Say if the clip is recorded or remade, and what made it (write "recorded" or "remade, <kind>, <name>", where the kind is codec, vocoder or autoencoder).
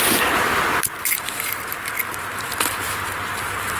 recorded